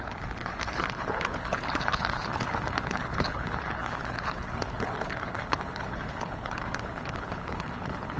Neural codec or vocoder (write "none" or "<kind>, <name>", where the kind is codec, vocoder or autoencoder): codec, HILCodec